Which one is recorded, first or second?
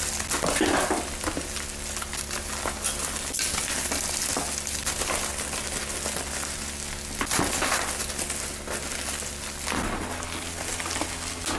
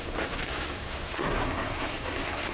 first